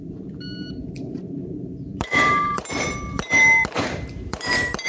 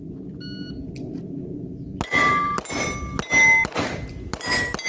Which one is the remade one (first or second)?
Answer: first